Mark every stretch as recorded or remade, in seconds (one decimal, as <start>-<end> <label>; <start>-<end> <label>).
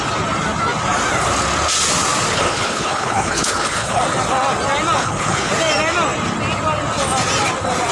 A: 0.0-2.3 recorded; 2.3-4.0 remade; 4.0-5.0 recorded; 5.0-5.5 remade; 5.5-7.9 recorded